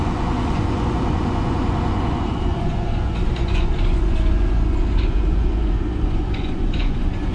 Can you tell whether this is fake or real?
fake